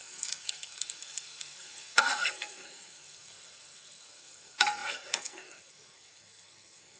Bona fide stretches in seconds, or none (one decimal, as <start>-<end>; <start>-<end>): none